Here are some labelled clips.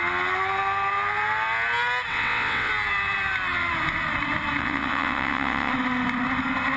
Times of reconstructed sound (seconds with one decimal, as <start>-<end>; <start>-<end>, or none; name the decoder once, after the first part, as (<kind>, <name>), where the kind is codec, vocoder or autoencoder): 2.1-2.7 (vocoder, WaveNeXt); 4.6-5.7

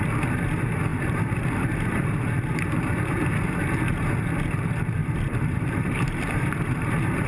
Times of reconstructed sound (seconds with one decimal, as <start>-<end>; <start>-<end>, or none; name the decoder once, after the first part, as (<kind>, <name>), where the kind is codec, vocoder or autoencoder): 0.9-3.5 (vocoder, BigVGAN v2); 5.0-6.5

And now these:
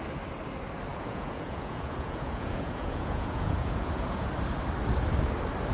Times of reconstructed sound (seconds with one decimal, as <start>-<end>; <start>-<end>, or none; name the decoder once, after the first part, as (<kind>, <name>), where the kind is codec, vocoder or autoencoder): 0.9-4.3 (vocoder, Vocos)

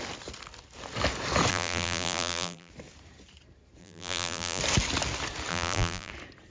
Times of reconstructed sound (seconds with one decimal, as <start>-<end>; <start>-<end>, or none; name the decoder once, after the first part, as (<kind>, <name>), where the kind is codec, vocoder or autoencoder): 1.5-2.7 (vocoder, BigVGAN v2); 3.8-4.6; 5.5-6.1

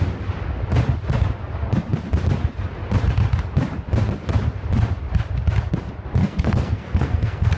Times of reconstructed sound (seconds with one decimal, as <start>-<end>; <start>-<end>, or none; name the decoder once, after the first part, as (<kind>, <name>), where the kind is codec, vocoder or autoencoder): 6.2-7.6 (codec, SNAC)